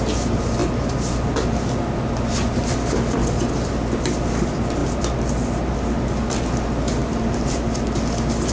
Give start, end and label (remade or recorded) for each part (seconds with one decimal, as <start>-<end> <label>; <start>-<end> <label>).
0.0-7.0 recorded; 7.0-7.6 remade; 7.6-8.5 recorded